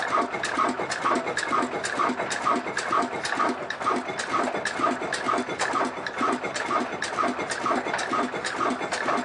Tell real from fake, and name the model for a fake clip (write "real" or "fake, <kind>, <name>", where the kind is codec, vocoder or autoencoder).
real